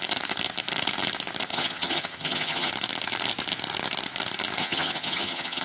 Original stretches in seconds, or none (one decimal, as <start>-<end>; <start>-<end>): 0.0-1.5; 2.7-4.6